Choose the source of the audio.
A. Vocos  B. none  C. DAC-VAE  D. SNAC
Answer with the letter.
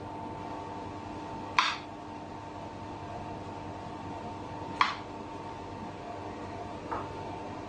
B